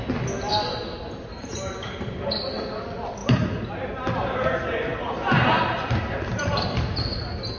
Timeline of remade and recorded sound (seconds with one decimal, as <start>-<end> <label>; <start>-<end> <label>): 0.0-0.5 recorded; 0.5-2.3 remade; 2.3-3.2 recorded; 3.2-3.9 remade; 3.9-4.9 recorded; 4.9-6.3 remade; 6.3-7.6 recorded